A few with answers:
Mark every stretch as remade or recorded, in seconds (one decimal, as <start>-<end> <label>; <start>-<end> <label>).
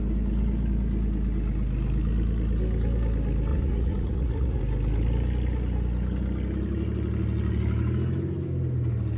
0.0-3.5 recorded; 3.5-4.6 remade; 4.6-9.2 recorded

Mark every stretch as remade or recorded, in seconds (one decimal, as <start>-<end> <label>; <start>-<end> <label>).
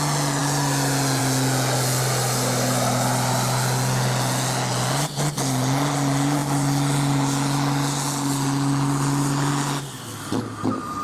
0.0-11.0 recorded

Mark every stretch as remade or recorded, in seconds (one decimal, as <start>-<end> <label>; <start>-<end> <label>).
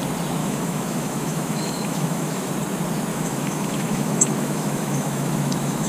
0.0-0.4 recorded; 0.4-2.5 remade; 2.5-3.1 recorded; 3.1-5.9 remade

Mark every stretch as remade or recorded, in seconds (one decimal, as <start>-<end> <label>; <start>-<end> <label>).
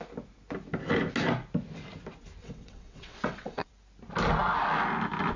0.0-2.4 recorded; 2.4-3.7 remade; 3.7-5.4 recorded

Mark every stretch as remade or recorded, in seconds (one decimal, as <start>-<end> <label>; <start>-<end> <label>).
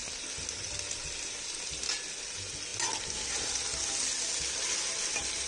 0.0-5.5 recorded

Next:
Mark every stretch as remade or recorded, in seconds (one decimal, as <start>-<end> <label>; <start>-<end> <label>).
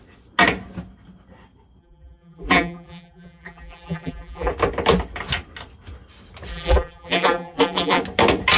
0.0-1.8 recorded; 1.8-4.5 remade; 4.5-6.5 recorded; 6.5-8.0 remade; 8.0-8.6 recorded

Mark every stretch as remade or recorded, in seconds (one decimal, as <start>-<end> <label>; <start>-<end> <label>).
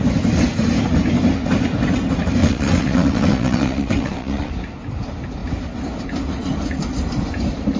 0.0-2.4 recorded; 2.4-4.5 remade; 4.5-7.8 recorded